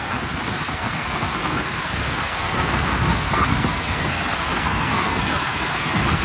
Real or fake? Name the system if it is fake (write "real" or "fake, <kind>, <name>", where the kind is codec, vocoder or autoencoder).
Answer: fake, codec, SNAC